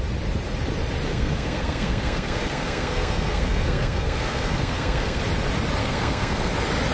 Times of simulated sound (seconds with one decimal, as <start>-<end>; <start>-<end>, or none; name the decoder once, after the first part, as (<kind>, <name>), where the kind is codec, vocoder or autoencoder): 1.1-5.2 (codec, SNAC); 5.8-6.5